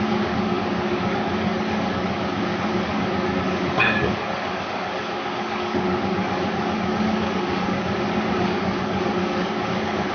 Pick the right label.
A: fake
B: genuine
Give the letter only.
A